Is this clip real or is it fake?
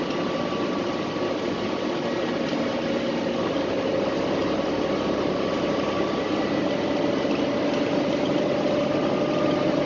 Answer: real